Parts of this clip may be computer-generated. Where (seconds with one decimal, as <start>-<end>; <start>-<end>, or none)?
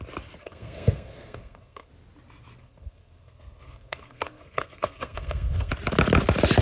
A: 0.4-1.9; 2.6-5.7